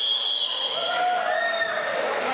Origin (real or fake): real